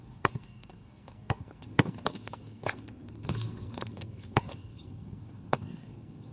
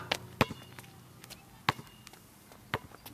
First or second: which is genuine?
second